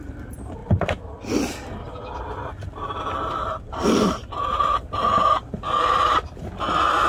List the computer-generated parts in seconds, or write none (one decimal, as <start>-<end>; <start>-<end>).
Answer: 0.0-0.6; 3.0-7.1